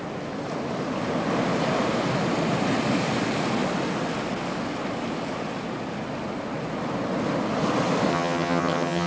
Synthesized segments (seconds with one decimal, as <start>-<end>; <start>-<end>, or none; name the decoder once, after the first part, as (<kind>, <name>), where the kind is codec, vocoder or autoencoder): 8.1-9.1 (vocoder, HiFi-GAN)